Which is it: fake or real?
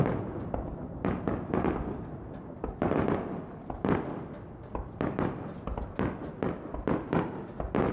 real